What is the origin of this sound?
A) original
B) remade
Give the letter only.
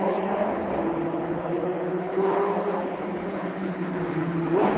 B